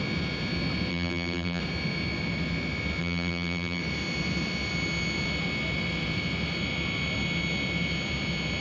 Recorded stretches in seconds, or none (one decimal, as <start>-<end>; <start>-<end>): 0.0-0.9; 1.6-3.0; 3.8-8.6